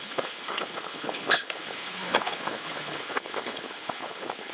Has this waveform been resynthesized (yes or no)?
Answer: yes